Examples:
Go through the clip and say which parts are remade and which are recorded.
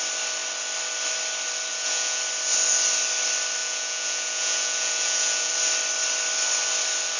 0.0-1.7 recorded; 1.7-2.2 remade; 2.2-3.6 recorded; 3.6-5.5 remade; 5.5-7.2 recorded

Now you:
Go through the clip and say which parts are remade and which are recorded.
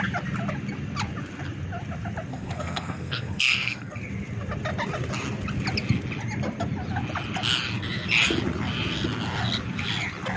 0.0-2.3 recorded; 2.3-4.0 remade; 4.0-10.4 recorded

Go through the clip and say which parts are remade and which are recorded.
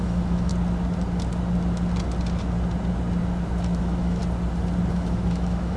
0.0-0.5 remade; 0.5-3.8 recorded; 3.8-4.2 remade; 4.2-4.9 recorded; 4.9-5.8 remade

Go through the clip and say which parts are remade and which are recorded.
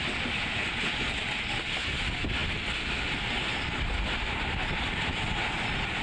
0.0-6.0 recorded